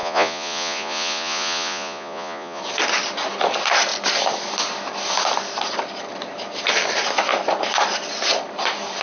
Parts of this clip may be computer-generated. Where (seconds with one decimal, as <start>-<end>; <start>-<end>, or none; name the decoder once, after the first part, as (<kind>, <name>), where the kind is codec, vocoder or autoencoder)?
0.0-2.6 (vocoder, Vocos)